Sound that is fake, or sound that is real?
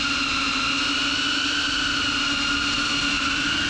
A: real